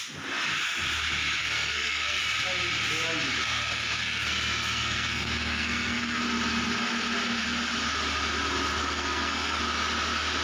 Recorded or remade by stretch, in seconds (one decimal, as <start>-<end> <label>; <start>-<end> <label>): 0.0-1.4 recorded; 1.4-2.2 remade; 2.2-3.4 recorded; 3.4-6.2 remade; 6.2-8.8 recorded; 8.8-9.6 remade; 9.6-10.4 recorded